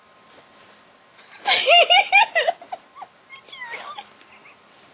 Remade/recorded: recorded